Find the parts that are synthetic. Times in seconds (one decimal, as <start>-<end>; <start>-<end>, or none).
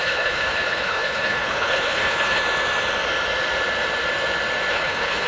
0.0-2.4; 4.7-5.3